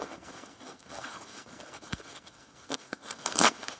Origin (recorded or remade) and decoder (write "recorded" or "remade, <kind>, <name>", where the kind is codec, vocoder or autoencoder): remade, codec, SNAC